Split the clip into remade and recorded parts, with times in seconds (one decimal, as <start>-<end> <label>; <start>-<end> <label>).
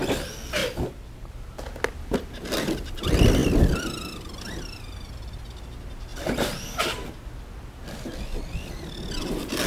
0.0-0.6 recorded; 0.6-1.3 remade; 1.3-9.7 recorded